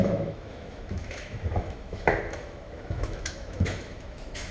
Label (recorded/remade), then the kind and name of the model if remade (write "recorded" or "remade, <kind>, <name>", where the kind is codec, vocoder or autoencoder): remade, autoencoder, DAC-VAE